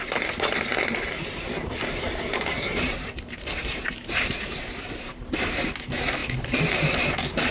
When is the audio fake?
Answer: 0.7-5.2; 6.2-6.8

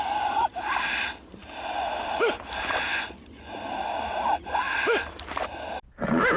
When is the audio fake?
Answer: 2.9-3.5

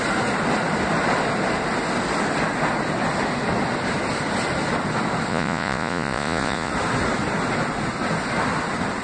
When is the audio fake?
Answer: 5.3-6.7

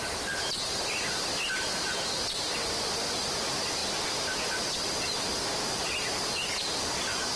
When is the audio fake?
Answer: none